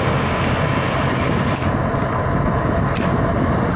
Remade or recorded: recorded